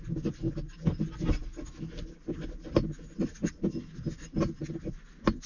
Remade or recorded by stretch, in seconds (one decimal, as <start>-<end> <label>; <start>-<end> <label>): 0.0-5.5 recorded